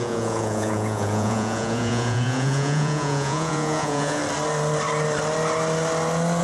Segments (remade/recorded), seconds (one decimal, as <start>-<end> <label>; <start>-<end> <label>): 0.0-4.2 remade; 4.2-6.4 recorded